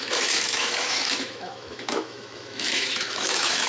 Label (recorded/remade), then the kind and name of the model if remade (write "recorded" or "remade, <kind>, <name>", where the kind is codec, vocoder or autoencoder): remade, autoencoder, DAC-VAE